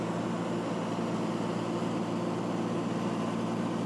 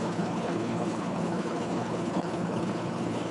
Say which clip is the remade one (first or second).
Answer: second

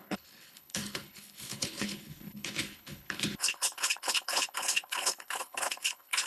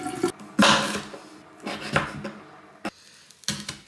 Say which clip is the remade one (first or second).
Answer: first